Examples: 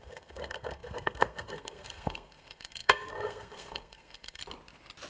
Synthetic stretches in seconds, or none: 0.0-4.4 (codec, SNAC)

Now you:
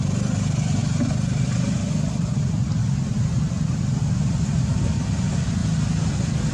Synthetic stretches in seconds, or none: none

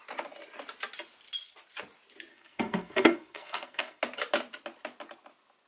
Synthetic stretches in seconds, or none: 2.3-4.0 (codec, SNAC)

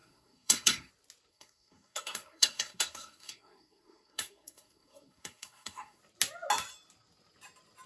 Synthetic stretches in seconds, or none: 0.0-0.9 (codec, SNAC); 1.3-6.0

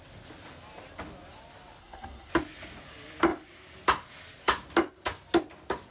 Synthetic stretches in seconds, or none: 1.8-2.3 (codec, SNAC)